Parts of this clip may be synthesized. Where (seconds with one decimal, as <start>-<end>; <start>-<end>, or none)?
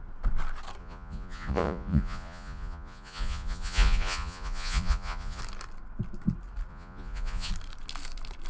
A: 0.8-5.4; 6.7-7.5